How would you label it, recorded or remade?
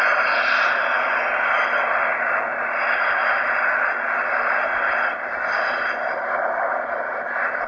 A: remade